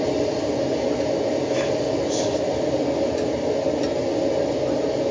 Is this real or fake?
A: real